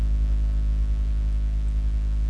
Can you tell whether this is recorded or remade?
recorded